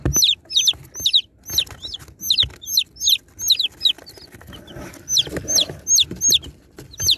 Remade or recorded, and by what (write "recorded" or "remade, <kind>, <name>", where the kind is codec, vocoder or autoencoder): recorded